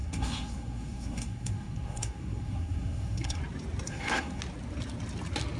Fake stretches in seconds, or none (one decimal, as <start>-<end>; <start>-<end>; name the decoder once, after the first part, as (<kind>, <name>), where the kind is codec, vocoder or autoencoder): 0.0-3.4 (codec, SNAC); 3.9-4.4